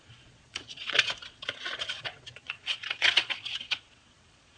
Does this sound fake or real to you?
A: fake